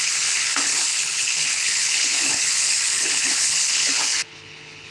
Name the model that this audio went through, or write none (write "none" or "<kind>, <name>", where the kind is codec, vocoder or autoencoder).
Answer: codec, HILCodec